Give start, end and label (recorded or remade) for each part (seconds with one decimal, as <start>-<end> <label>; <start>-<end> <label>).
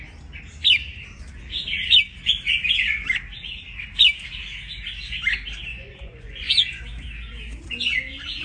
0.0-5.7 recorded; 5.7-6.8 remade; 6.8-8.4 recorded